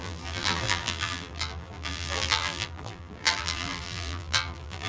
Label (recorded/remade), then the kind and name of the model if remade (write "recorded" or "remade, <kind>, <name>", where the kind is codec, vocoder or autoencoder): remade, vocoder, BigVGAN v2